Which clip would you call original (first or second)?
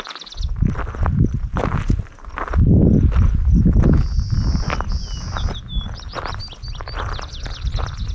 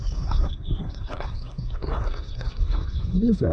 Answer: first